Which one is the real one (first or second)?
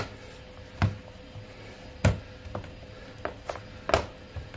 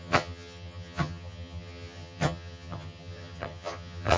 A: first